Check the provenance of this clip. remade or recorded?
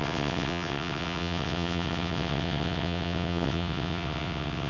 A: remade